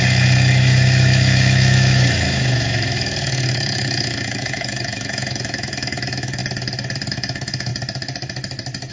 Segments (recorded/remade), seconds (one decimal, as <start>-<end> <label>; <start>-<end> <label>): 0.0-6.4 remade; 6.4-7.1 recorded; 7.1-7.7 remade; 7.7-8.9 recorded